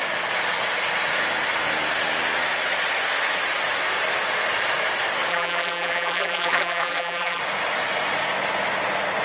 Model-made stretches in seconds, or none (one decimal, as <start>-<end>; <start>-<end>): 5.3-7.4